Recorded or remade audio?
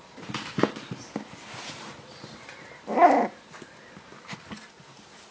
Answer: recorded